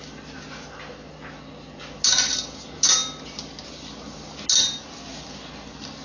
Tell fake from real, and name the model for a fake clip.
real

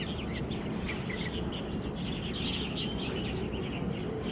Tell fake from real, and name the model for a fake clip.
real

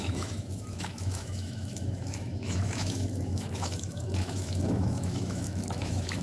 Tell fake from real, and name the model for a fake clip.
fake, autoencoder, DAC-VAE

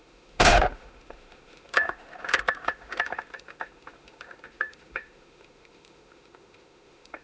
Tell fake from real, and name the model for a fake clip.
fake, autoencoder, DAC-VAE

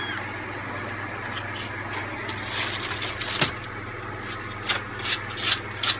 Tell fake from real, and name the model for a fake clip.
real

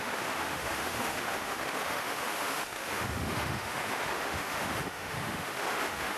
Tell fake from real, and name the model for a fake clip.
fake, autoencoder, DAC-VAE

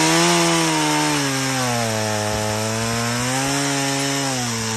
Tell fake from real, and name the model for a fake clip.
real